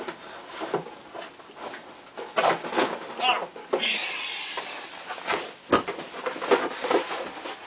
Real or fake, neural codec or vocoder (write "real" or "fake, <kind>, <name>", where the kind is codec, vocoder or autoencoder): real